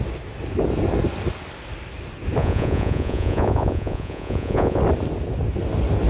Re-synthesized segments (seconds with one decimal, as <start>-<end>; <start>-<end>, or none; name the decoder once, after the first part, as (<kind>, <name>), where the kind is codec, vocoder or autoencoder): 2.4-4.8 (vocoder, Vocos)